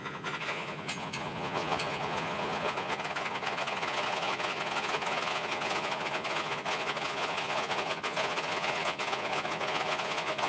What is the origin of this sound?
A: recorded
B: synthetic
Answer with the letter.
B